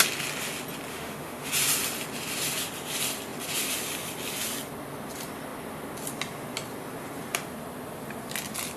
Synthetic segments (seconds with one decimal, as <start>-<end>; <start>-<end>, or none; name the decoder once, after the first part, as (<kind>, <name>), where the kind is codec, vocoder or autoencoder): 0.9-1.5 (autoencoder, DAC-VAE)